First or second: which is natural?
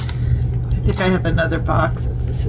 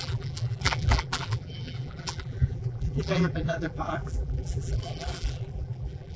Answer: first